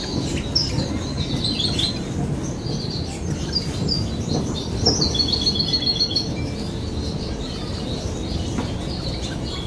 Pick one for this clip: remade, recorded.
recorded